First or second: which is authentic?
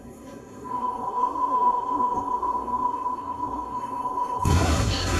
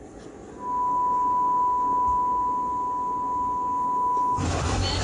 second